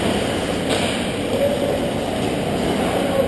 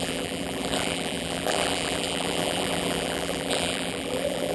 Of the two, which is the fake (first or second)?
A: second